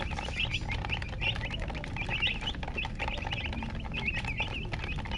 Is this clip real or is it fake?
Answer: fake